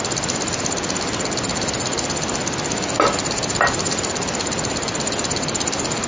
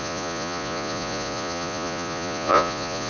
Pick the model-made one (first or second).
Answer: second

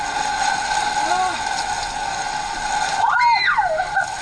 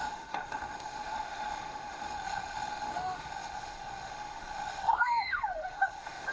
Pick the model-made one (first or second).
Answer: second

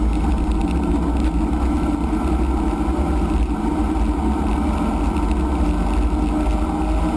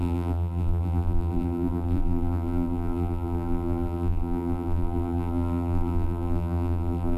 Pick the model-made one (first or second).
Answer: second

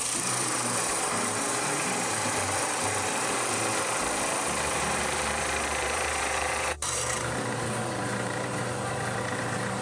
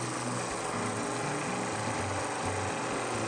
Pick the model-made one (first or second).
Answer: first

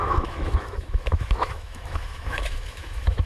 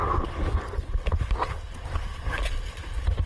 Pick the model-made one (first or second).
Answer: first